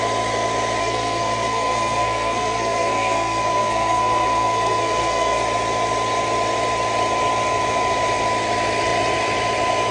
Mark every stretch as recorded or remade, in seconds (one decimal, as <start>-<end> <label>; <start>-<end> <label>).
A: 0.0-0.8 recorded; 0.8-5.4 remade; 5.4-9.9 recorded